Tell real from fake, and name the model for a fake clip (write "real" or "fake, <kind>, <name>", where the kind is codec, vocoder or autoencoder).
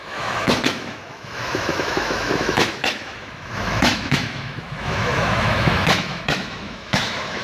fake, autoencoder, DAC-VAE